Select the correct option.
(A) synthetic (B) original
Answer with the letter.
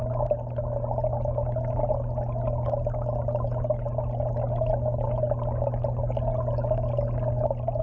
B